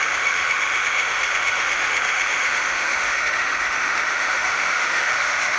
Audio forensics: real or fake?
fake